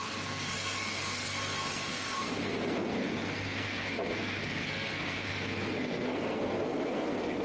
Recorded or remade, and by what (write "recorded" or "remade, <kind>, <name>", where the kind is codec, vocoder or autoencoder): remade, codec, SNAC